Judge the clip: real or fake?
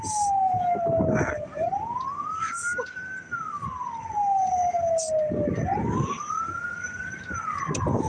real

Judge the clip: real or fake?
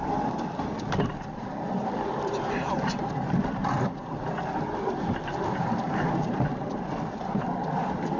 fake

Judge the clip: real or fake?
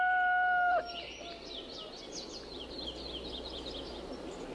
real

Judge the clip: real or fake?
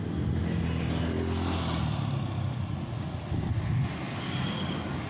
real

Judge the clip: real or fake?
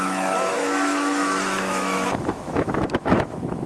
fake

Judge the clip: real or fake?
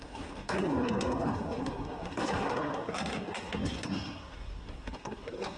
fake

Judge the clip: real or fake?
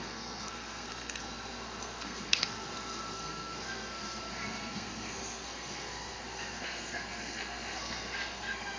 fake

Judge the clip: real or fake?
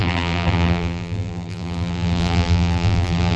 fake